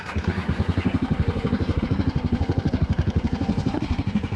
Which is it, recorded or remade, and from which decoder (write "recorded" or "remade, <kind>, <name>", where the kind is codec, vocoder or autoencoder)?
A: remade, codec, SNAC